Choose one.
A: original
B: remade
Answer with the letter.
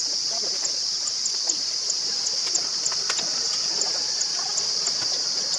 A